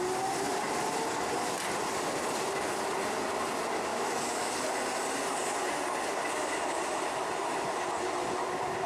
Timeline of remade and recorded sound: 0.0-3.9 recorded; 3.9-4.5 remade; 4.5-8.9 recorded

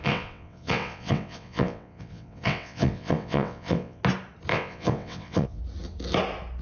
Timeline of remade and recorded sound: 0.0-4.0 remade; 4.0-4.5 recorded; 4.5-5.6 remade; 5.6-6.6 recorded

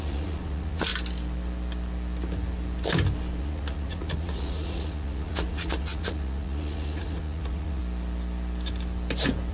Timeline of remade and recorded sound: 0.0-0.9 remade; 0.9-3.4 recorded; 3.4-7.8 remade; 7.8-9.5 recorded

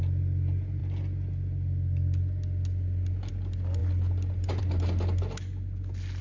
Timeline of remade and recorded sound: 0.0-6.2 recorded

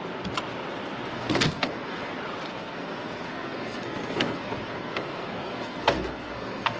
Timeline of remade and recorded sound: 0.0-1.1 recorded; 1.1-2.1 remade; 2.1-2.5 recorded; 2.5-6.8 remade